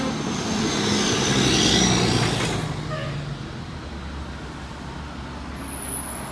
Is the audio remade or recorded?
recorded